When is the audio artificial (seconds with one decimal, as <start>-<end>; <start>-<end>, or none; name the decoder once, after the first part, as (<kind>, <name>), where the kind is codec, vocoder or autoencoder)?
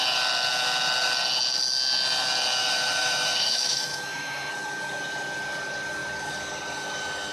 2.6-4.5 (autoencoder, DAC-VAE)